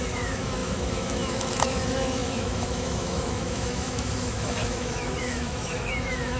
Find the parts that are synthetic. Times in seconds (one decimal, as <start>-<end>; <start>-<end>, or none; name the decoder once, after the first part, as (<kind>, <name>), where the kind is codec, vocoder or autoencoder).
0.0-6.4 (autoencoder, DAC-VAE)